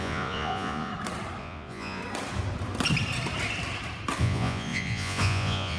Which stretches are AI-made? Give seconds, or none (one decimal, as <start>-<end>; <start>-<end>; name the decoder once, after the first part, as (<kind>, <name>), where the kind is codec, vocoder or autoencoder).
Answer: 0.0-0.9 (vocoder, Vocos); 1.4-2.0; 4.2-5.8